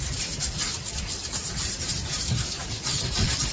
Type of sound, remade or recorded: remade